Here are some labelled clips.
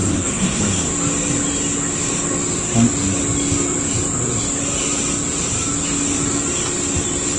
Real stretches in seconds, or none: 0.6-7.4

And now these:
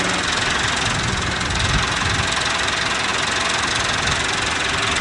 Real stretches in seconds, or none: 0.0-5.0

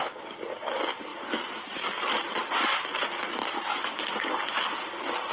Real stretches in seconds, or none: 0.0-5.3

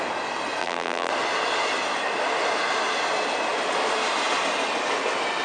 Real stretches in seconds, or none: 0.0-0.6; 1.1-5.4

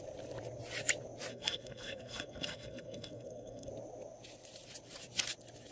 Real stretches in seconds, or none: 0.0-1.3; 3.7-5.7